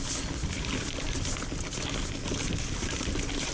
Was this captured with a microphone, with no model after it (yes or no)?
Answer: yes